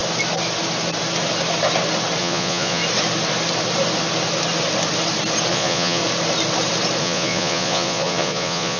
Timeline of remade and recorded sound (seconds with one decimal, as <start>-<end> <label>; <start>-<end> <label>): 0.0-2.2 recorded; 2.2-2.8 remade; 2.8-5.5 recorded; 5.5-6.0 remade; 6.0-7.0 recorded; 7.0-8.8 remade